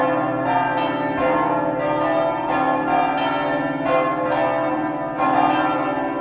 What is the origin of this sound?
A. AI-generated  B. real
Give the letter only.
B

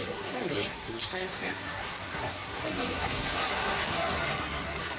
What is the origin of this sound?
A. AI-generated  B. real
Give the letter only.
A